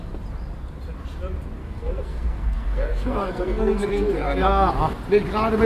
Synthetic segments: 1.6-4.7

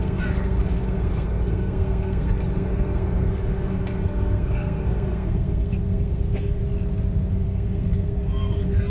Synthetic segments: 0.0-6.6; 7.3-8.9

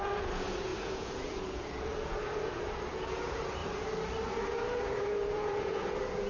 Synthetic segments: 0.0-3.6; 4.4-6.3

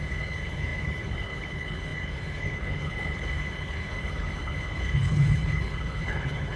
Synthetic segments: 0.0-6.6

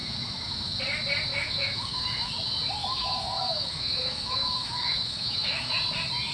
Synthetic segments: 0.0-0.8; 1.3-2.3; 2.8-5.7